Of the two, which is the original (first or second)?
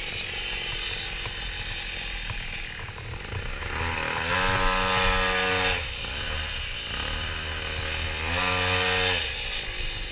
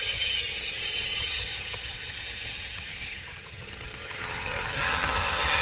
first